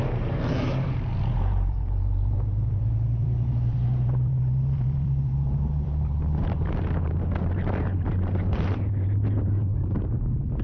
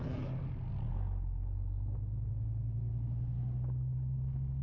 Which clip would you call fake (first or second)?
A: first